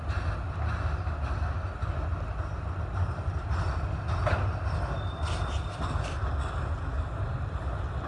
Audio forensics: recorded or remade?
recorded